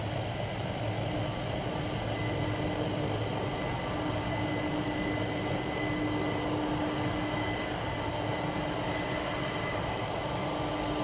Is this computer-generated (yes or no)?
no